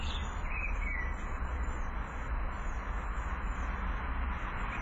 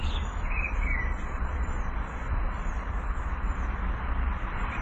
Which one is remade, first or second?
second